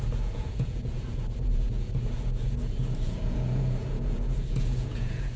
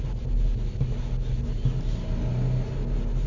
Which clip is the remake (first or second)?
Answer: first